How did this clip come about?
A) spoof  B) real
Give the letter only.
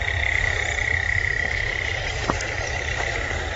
B